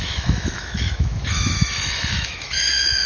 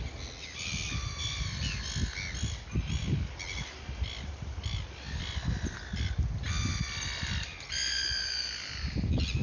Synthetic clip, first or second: first